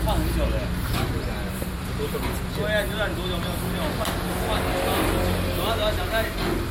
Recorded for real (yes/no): yes